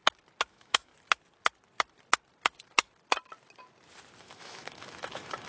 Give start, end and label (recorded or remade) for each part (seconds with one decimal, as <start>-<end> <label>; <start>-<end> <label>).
0.0-0.5 recorded; 0.5-0.9 remade; 0.9-4.2 recorded; 4.2-5.5 remade